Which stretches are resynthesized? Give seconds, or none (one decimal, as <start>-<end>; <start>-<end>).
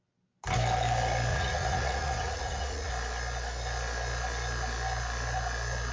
1.3-2.9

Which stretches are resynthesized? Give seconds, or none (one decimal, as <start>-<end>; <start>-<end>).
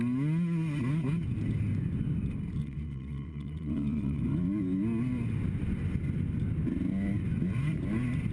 2.6-4.2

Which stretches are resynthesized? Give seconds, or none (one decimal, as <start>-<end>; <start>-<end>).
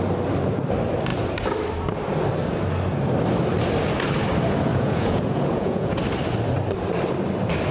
4.7-6.0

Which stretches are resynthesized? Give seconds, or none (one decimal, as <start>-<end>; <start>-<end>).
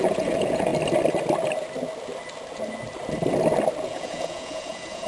0.0-0.7; 3.8-5.1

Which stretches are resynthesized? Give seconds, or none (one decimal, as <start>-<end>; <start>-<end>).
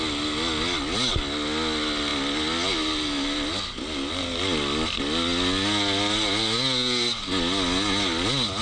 none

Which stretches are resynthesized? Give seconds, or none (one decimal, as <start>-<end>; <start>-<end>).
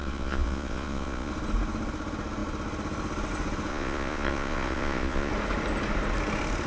0.0-1.3; 3.7-5.3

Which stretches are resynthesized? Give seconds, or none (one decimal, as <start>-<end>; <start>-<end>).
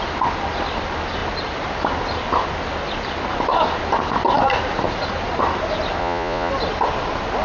6.0-6.5